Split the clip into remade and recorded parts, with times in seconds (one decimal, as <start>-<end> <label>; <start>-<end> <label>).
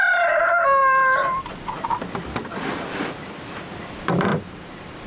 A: 0.0-4.3 recorded; 4.3-5.1 remade